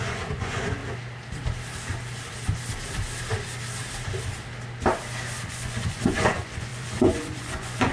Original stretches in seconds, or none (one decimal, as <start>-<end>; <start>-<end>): 0.8-5.5